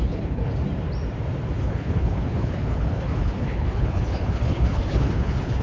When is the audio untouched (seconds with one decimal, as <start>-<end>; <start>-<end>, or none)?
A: 0.5-1.6